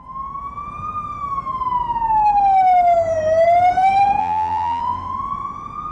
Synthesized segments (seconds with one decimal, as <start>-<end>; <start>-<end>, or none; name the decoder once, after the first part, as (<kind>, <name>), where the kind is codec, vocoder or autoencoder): 4.2-4.8 (vocoder, BigVGAN v2)